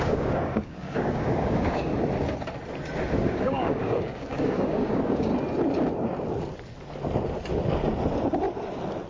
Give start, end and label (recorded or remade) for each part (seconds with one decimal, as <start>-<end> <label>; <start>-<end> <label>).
0.0-1.9 remade; 1.9-3.2 recorded; 3.2-5.3 remade; 5.3-9.1 recorded